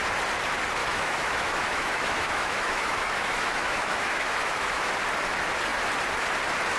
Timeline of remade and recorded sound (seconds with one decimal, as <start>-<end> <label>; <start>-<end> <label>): 0.0-0.8 recorded; 0.8-4.9 remade; 4.9-6.8 recorded